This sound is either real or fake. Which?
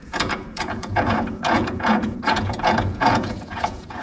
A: fake